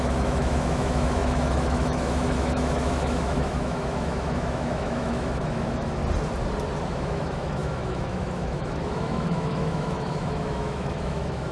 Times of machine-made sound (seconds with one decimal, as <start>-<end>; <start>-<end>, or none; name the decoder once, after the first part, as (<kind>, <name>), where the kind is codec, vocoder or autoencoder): 0.0-6.0 (autoencoder, DAC-VAE); 6.8-11.5